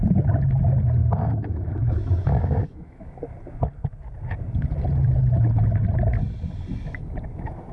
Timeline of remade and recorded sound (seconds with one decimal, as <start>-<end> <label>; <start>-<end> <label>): 0.0-1.0 recorded; 1.0-3.2 remade; 3.2-7.7 recorded